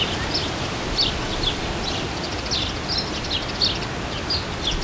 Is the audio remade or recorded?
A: recorded